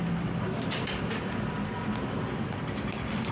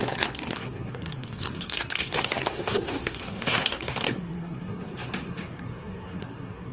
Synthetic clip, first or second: second